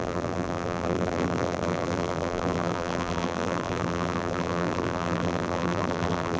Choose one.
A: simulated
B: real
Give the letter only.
A